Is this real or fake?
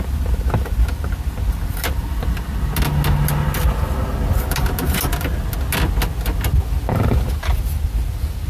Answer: real